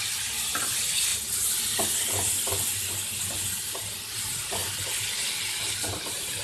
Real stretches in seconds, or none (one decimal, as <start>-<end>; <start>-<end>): 1.1-3.6; 4.6-5.1

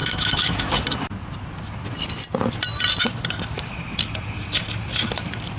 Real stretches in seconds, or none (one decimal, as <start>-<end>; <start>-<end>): 0.7-5.6

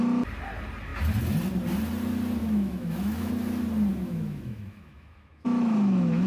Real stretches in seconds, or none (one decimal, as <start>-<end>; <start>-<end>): 0.0-2.4; 3.3-3.9

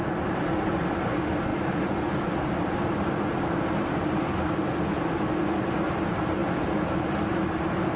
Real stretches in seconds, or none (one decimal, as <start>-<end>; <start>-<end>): 0.0-8.0

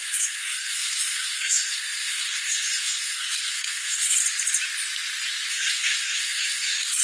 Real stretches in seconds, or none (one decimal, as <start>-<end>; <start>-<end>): 4.2-5.5

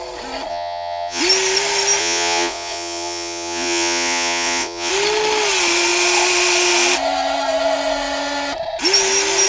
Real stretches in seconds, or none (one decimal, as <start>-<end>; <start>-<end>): 0.0-0.5; 1.2-2.0; 4.9-9.5

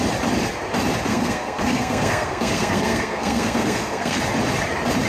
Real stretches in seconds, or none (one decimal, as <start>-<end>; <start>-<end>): 0.0-1.1; 4.2-5.1